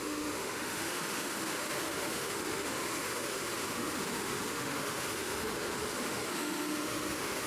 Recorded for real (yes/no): no